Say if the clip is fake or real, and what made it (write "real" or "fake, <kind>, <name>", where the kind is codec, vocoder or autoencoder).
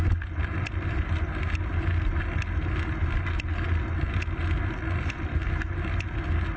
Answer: real